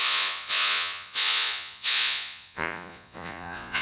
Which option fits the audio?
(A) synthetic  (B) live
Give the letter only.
A